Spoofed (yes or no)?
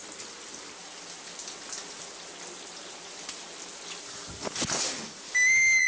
no